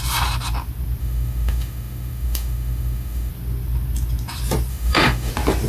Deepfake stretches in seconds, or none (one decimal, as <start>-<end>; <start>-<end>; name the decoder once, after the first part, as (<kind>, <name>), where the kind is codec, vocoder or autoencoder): 1.0-3.3 (autoencoder, DAC-VAE); 4.7-5.3